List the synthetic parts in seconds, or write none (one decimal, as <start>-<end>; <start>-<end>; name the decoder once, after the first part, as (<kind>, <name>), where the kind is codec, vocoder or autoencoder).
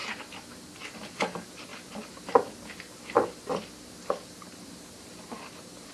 none